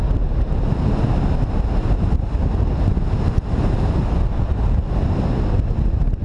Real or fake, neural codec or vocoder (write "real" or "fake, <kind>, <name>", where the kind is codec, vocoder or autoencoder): real